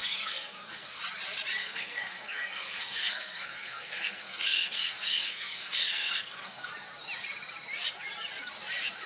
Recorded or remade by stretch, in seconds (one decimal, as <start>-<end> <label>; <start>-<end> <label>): 0.0-1.0 remade; 1.0-1.6 recorded; 1.6-6.7 remade; 6.7-9.1 recorded